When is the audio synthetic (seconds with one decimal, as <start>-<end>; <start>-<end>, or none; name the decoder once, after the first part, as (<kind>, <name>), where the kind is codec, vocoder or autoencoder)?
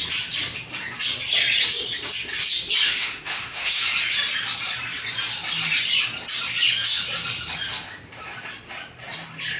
2.9-3.8 (autoencoder, DAC-VAE)